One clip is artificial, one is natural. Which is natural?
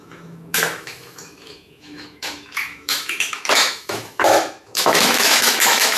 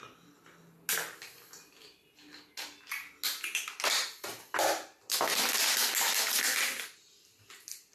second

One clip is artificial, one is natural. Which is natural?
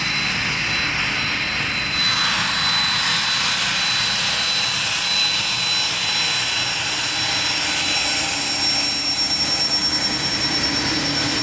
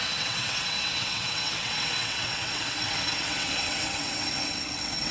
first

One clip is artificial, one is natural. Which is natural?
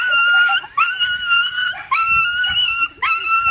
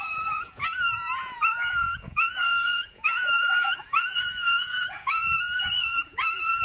first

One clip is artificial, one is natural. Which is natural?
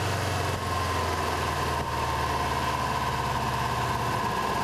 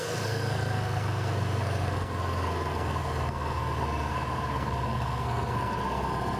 first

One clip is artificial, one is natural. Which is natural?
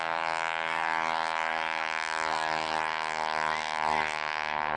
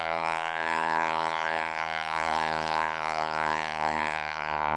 first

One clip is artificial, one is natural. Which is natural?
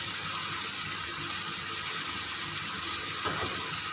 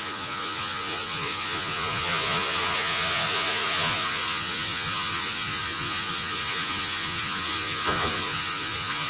first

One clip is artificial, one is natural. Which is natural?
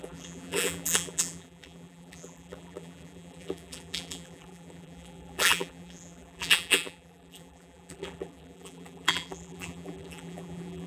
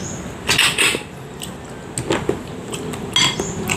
second